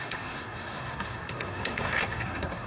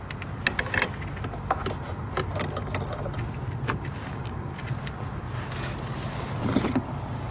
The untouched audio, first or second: second